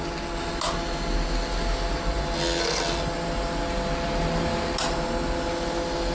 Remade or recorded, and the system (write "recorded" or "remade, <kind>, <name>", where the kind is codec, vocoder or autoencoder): recorded